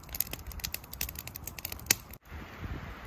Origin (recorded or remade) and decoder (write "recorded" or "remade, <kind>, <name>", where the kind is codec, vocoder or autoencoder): recorded